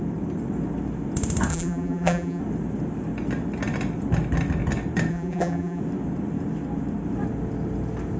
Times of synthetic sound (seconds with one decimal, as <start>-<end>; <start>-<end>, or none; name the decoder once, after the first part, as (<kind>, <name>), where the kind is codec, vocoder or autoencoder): 1.5-2.4 (vocoder, BigVGAN v2); 5.1-5.8